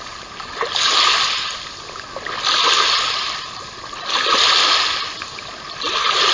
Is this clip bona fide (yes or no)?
yes